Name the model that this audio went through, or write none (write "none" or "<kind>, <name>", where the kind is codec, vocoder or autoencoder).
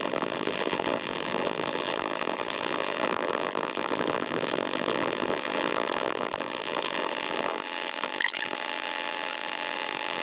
vocoder, BigVGAN v2